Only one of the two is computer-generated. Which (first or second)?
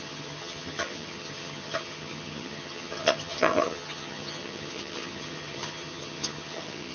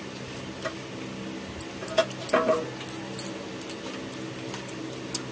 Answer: first